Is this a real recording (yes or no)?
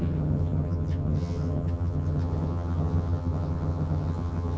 no